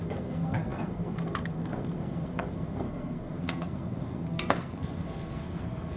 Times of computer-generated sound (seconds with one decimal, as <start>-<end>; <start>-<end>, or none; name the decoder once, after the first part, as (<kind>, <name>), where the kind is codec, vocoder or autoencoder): 0.0-6.0 (codec, SNAC)